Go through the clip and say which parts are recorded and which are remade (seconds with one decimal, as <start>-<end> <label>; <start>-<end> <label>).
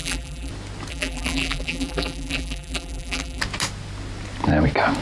0.0-0.5 remade; 0.5-0.9 recorded; 0.9-3.4 remade; 3.4-5.0 recorded